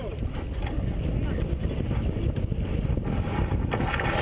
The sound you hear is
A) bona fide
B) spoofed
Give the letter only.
A